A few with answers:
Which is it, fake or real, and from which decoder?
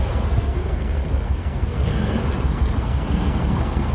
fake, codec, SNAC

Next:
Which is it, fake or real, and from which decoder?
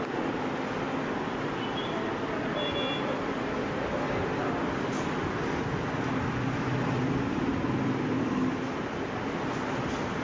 real